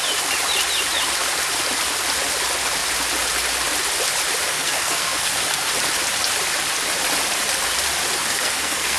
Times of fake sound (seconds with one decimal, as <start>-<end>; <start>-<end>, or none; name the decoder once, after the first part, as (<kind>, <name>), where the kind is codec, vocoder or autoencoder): 4.5-5.7 (codec, SNAC); 8.2-9.0